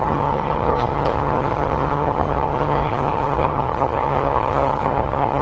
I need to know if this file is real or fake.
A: fake